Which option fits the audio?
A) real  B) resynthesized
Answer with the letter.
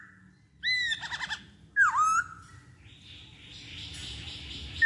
A